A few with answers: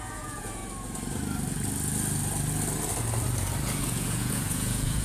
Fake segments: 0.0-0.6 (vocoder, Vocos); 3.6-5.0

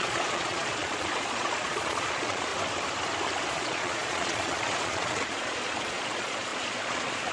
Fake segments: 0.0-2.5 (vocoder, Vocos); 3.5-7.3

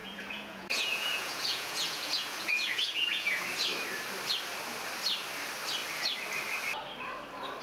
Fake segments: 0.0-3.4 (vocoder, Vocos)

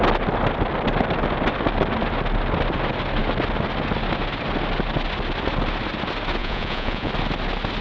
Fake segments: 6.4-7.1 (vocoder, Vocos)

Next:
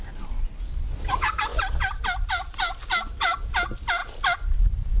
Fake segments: none

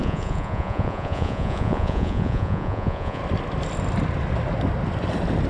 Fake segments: 0.0-3.2 (vocoder, Vocos)

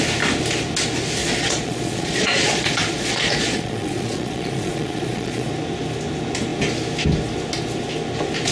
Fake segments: 1.2-5.5 (vocoder, Vocos)

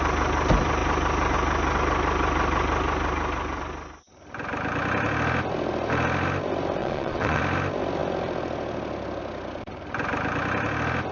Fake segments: 6.8-7.4 (vocoder, Vocos)